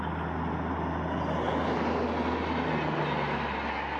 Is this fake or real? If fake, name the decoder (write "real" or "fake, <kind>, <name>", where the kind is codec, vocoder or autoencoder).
real